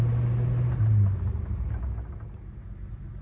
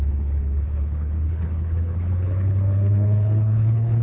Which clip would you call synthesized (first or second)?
second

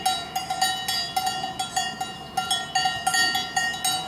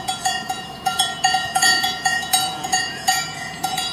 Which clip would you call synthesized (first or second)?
second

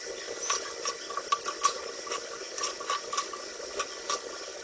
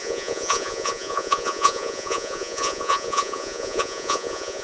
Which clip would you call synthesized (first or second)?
second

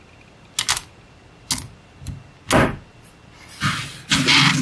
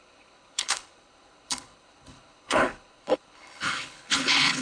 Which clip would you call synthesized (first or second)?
second